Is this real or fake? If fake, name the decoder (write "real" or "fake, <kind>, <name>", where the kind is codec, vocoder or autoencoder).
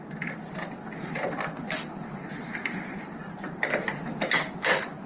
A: real